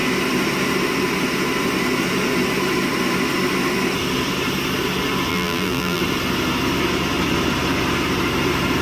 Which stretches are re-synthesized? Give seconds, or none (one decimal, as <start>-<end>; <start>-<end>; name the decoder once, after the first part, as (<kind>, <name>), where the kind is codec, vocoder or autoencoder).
5.3-6.0 (vocoder, BigVGAN v2)